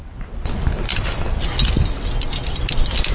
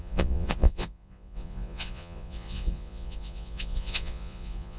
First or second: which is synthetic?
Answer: second